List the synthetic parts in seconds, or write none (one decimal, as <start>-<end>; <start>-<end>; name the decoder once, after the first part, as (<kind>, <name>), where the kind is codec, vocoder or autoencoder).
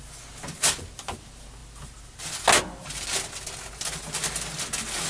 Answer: none